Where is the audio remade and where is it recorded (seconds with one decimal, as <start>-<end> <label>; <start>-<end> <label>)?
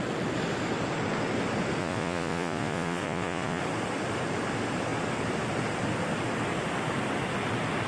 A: 0.0-1.8 recorded; 1.8-3.6 remade; 3.6-7.9 recorded